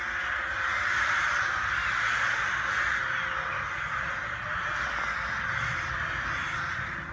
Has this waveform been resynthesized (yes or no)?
no